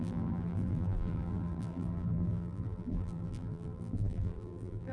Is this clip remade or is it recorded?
remade